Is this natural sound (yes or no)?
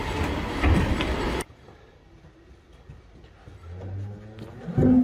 yes